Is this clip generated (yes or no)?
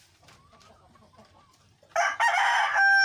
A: no